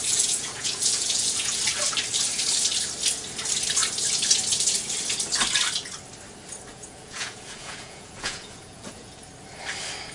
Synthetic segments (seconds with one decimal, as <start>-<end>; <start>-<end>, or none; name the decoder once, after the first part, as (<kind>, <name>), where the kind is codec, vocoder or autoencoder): 0.0-1.6 (vocoder, Vocos); 6.7-9.2